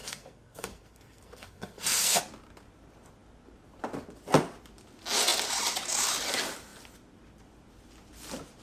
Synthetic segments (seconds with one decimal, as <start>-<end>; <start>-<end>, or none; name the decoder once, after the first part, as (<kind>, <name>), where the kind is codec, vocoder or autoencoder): 0.0-2.2 (codec, SNAC)